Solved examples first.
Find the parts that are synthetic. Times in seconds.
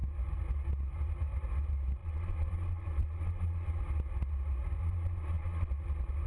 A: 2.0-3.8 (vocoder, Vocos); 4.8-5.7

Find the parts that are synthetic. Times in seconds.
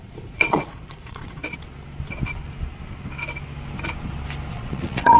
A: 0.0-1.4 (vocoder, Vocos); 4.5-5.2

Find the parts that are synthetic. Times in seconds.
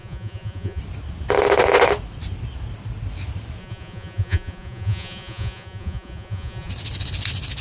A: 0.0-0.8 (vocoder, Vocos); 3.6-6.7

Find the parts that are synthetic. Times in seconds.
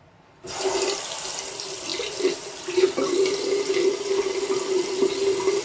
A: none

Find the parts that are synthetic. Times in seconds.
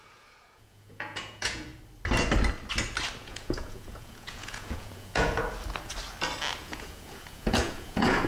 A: 0.0-1.7 (vocoder, Vocos); 3.2-5.4; 6.6-8.3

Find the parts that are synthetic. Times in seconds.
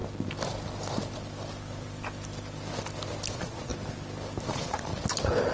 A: 3.3-3.7 (vocoder, Vocos); 4.5-4.9